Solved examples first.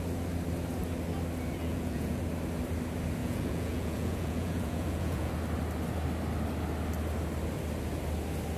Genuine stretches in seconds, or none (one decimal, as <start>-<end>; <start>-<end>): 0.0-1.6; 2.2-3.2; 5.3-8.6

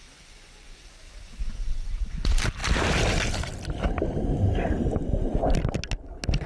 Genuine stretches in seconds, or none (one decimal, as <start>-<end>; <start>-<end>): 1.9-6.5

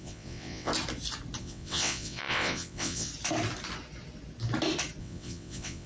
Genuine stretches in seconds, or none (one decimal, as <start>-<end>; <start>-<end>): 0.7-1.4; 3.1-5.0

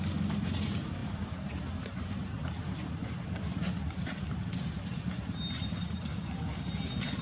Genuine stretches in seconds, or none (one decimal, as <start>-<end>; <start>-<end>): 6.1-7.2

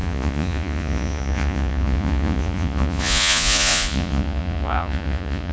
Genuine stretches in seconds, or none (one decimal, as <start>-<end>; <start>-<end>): none

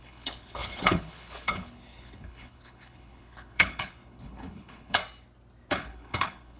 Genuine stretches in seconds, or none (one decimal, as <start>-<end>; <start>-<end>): 5.0-5.7